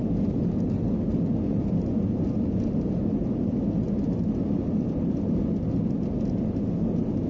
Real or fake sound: real